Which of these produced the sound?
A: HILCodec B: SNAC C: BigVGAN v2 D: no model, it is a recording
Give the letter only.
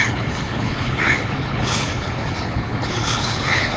A